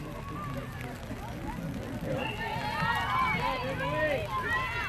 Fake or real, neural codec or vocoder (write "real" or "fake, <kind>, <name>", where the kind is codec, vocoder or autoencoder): real